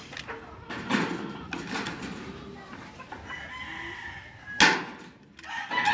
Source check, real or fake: real